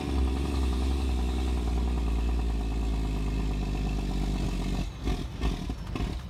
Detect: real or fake real